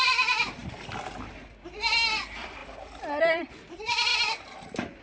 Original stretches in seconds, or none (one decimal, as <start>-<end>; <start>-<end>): 0.6-2.2; 2.6-3.2; 4.1-5.0